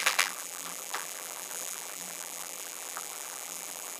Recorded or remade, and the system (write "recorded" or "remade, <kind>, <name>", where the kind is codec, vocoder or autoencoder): remade, vocoder, BigVGAN v2